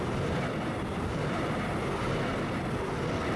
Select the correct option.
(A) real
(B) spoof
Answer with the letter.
A